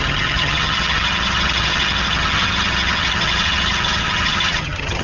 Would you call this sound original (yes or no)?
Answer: no